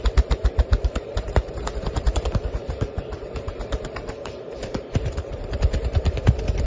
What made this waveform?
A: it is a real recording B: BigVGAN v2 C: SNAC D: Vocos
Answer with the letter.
B